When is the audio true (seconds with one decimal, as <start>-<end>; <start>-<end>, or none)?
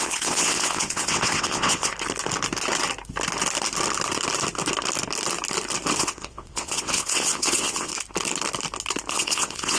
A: 1.9-6.0; 7.9-9.1